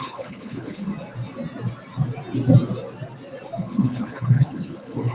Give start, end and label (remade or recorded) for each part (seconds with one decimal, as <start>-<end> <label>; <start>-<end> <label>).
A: 0.0-0.8 remade; 0.8-3.6 recorded; 3.6-5.1 remade